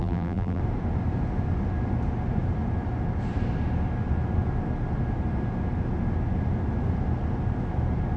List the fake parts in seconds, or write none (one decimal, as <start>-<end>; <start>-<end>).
0.0-0.6